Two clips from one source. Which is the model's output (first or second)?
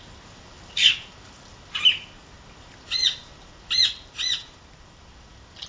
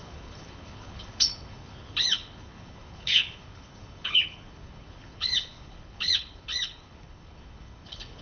second